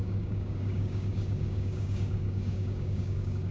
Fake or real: fake